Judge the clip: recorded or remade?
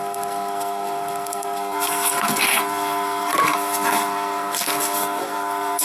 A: remade